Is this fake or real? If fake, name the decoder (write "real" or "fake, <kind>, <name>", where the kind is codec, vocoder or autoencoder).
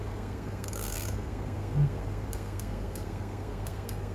fake, codec, SNAC